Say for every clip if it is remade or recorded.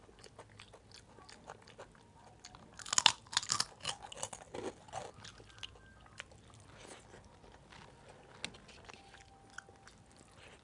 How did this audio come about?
recorded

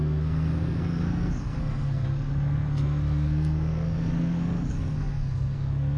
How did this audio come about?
remade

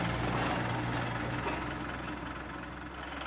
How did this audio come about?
recorded